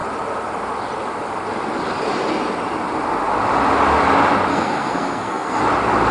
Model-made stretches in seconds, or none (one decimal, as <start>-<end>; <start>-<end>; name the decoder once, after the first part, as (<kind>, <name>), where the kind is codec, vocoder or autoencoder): 4.5-5.6 (codec, SNAC)

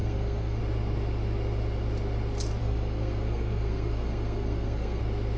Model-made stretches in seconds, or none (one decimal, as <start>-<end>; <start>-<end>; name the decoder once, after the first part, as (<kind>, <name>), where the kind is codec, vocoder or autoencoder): 0.0-0.6 (codec, SNAC); 2.6-5.0

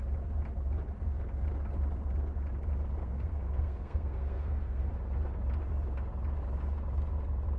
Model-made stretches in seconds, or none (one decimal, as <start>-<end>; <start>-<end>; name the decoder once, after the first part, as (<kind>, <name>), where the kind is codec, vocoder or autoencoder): 3.0-4.9 (codec, SNAC)

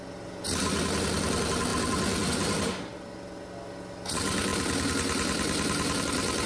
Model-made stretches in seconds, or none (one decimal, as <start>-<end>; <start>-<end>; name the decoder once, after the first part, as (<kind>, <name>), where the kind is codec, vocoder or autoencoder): none

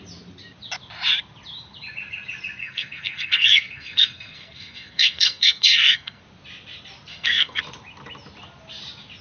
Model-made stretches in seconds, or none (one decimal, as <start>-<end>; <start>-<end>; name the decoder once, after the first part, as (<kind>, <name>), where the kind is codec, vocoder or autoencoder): 2.6-6.2 (codec, SNAC); 7.1-7.6

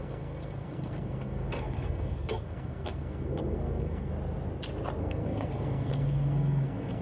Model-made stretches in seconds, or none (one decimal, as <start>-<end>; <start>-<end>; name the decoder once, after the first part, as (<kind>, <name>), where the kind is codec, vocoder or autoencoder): 0.0-4.1 (codec, SNAC); 5.0-7.0

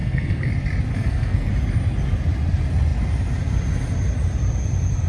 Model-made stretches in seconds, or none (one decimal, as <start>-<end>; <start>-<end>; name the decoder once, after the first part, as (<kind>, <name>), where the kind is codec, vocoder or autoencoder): 0.0-0.5 (codec, SNAC); 0.9-1.5

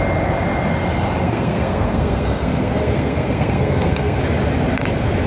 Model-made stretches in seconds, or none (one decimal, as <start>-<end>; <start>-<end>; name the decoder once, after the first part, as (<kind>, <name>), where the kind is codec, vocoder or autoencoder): 1.2-4.2 (codec, SNAC)